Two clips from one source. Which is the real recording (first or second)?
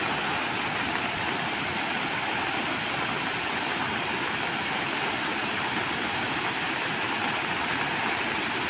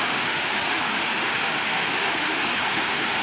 first